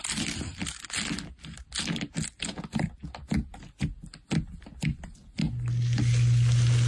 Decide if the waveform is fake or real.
real